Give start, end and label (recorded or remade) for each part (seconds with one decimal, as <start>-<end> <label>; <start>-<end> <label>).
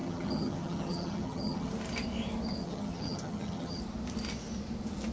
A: 0.0-1.7 remade; 1.7-2.6 recorded; 2.6-3.8 remade; 3.8-5.1 recorded